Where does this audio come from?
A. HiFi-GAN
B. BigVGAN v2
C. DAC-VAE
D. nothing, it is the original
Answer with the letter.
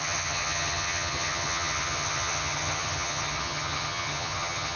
A